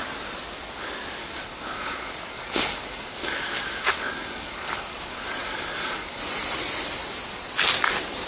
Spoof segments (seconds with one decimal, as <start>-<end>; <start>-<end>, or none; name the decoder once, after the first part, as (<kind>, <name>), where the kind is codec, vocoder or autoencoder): 1.2-6.2 (codec, DAC)